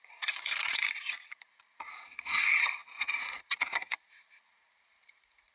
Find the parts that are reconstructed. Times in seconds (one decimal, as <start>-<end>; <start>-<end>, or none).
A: 0.0-5.5